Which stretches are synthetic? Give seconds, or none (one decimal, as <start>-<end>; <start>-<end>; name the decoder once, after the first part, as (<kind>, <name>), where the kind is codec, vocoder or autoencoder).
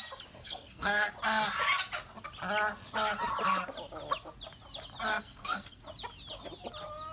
0.4-1.1 (codec, SNAC); 5.1-5.8